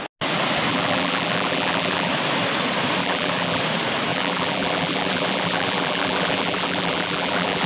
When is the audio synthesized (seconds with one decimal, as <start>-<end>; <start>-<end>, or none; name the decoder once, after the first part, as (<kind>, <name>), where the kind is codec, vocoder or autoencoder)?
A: 0.7-2.1 (vocoder, BigVGAN v2); 3.0-3.6; 4.1-7.7